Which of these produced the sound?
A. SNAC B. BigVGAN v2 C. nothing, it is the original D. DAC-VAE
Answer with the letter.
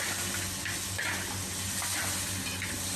C